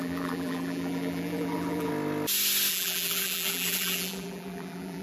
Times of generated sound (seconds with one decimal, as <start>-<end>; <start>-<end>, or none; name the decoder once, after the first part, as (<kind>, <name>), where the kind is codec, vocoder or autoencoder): 0.0-1.9 (vocoder, BigVGAN v2); 2.7-5.0